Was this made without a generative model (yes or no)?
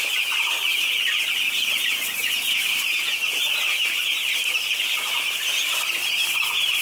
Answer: yes